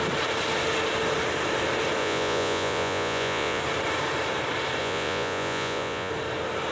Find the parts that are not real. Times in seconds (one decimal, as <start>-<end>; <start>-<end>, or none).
2.0-3.6; 4.8-6.1